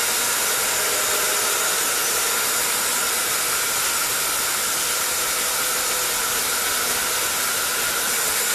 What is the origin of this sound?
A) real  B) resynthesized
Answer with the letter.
A